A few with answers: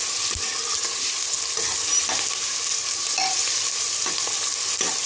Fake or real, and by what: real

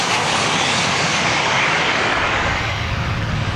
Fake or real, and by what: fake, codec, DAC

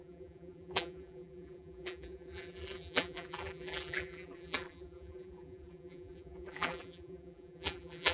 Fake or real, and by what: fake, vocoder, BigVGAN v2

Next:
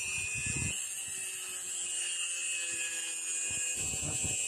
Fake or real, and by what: real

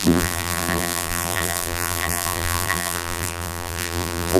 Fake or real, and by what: fake, vocoder, BigVGAN v2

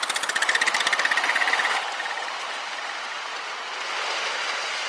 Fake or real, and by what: real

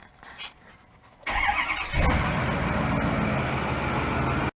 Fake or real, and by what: real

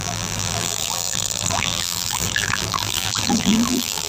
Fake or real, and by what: fake, vocoder, BigVGAN v2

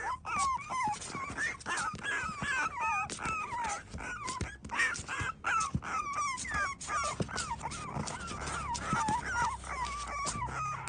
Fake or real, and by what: real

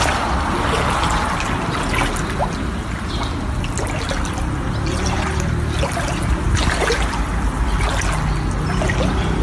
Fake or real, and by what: real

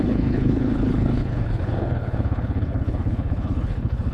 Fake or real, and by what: fake, codec, HILCodec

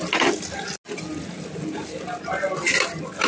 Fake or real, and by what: real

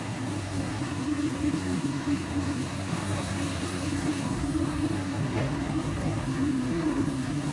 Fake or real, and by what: fake, codec, SNAC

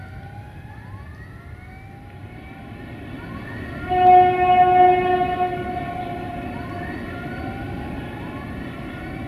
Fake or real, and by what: real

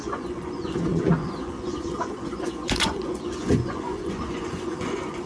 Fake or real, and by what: fake, vocoder, Vocos